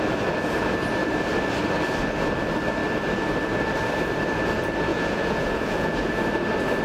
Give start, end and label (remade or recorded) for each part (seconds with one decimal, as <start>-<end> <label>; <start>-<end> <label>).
0.0-4.9 recorded; 4.9-6.1 remade; 6.1-6.8 recorded